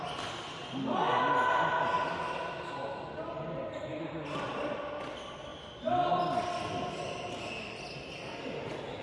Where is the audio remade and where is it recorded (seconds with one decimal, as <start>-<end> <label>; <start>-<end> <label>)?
0.0-9.0 recorded